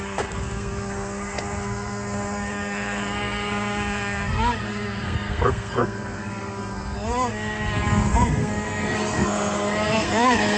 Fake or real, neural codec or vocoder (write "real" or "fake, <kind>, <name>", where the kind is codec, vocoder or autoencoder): fake, codec, SNAC